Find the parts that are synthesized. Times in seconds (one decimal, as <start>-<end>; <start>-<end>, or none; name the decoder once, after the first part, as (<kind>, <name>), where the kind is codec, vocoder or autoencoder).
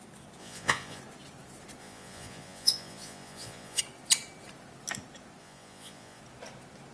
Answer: 0.4-1.0 (vocoder, Vocos); 1.8-3.8; 5.4-6.2